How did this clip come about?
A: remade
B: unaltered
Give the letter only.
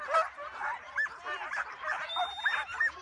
B